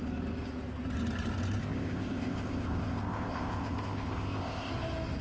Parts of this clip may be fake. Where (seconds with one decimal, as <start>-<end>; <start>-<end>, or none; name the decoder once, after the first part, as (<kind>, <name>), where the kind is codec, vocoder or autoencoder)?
1.6-4.7 (codec, ZipCodec)